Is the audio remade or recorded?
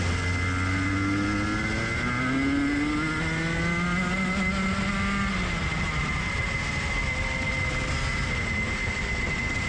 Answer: recorded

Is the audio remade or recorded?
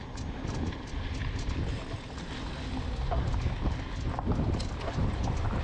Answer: recorded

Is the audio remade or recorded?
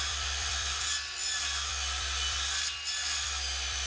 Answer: remade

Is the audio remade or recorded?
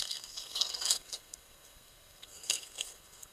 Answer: remade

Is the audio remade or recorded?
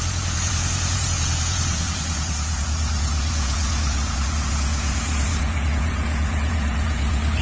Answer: remade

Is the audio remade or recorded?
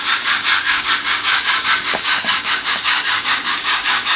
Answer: remade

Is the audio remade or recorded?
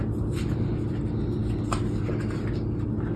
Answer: recorded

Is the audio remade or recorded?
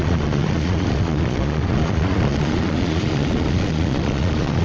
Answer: remade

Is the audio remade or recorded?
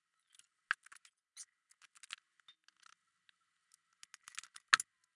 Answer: recorded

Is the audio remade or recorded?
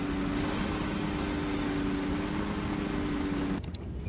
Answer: recorded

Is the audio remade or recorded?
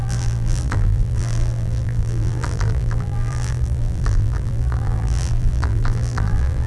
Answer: remade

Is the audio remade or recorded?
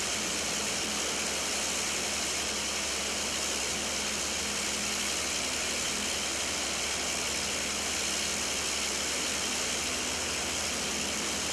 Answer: recorded